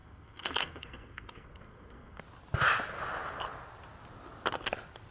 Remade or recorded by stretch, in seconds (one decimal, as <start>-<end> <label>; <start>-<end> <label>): 0.0-2.2 remade; 2.2-5.1 recorded